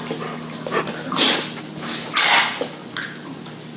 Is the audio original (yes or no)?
yes